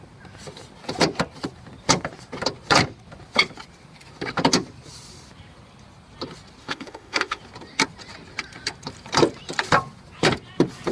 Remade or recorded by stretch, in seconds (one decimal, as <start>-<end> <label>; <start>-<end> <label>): 0.0-6.6 recorded; 6.6-7.4 remade; 7.4-10.9 recorded